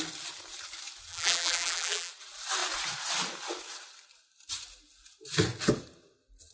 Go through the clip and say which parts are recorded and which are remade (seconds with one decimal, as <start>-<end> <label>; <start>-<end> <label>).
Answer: 0.0-1.1 recorded; 1.1-2.1 remade; 2.1-6.5 recorded